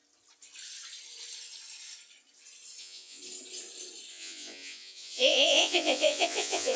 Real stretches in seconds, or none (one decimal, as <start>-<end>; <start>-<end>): 0.0-2.8; 3.2-4.1